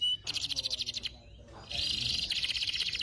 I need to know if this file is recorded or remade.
recorded